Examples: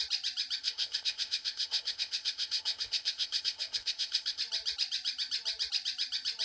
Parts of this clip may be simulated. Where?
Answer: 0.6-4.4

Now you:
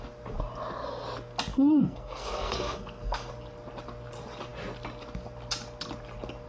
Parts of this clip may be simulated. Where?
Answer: 1.5-3.3

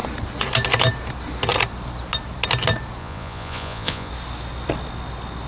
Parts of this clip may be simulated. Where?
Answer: 3.0-4.1

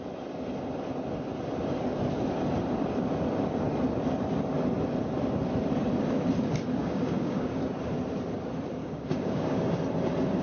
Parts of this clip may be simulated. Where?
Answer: 6.8-7.6; 8.8-9.6